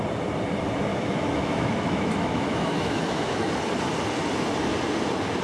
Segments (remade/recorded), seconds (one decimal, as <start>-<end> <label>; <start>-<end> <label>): 0.0-0.9 recorded; 0.9-3.5 remade; 3.5-5.4 recorded